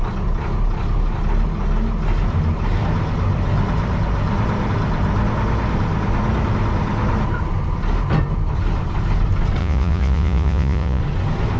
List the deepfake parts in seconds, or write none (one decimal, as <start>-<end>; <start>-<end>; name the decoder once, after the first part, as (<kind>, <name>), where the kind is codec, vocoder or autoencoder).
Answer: 9.6-11.0 (vocoder, Vocos)